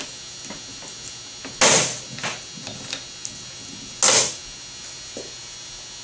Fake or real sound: real